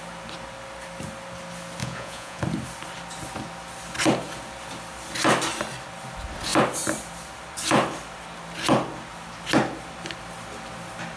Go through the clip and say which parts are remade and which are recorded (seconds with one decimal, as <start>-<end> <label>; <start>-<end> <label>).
0.0-1.8 recorded; 1.8-2.4 remade; 2.4-11.2 recorded